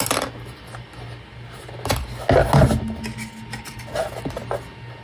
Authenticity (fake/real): real